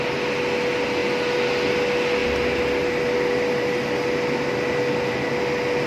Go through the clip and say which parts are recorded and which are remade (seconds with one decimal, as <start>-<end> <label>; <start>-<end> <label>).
0.0-2.2 recorded; 2.2-5.3 remade; 5.3-5.9 recorded

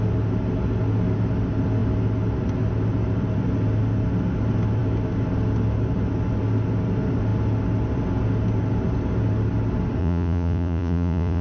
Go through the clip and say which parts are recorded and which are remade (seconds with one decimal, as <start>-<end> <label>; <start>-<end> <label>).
0.0-10.0 recorded; 10.0-11.4 remade